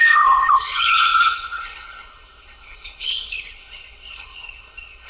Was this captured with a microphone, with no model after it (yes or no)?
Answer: no